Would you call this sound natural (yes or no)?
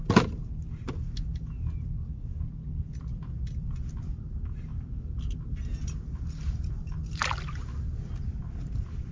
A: yes